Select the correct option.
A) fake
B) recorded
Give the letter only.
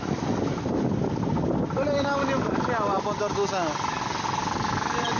B